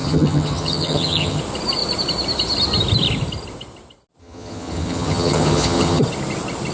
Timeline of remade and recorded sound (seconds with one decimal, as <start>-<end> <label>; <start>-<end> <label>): 0.0-1.4 remade; 1.4-4.2 recorded; 4.2-6.0 remade; 6.0-6.7 recorded